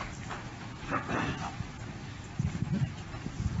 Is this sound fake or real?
real